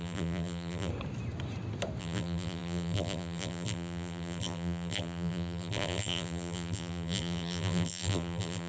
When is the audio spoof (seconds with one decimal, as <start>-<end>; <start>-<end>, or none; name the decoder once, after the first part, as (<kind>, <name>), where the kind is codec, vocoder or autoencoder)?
0.0-0.9 (vocoder, BigVGAN v2); 2.0-8.7